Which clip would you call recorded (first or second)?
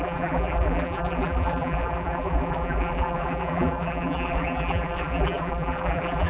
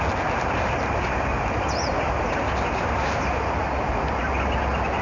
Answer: second